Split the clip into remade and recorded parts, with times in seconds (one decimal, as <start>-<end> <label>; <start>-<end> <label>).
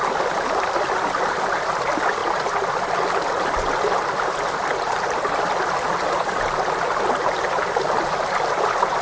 0.0-9.0 recorded